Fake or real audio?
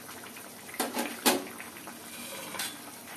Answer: fake